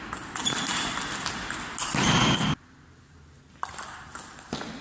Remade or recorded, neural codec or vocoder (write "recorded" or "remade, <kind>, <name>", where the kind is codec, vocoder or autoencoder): recorded